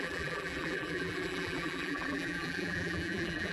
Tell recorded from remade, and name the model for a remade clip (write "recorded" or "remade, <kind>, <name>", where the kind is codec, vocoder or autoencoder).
remade, vocoder, BigVGAN v2